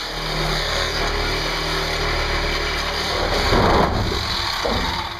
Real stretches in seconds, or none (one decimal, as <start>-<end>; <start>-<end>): 0.0-0.5; 1.0-5.2